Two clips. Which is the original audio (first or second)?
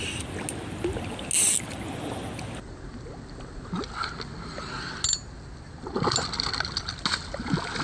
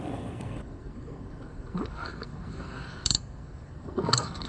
first